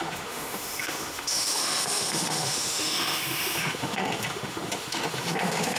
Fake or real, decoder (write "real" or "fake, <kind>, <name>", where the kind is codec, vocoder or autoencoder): fake, autoencoder, DAC-VAE